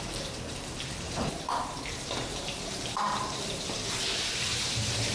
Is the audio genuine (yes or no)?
no